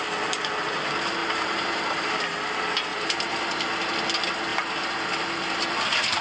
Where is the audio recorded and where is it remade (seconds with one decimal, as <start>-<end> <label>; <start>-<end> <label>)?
0.0-1.2 recorded; 1.2-2.2 remade; 2.2-2.9 recorded; 2.9-3.5 remade; 3.5-6.2 recorded